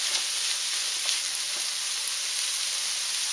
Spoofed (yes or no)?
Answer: no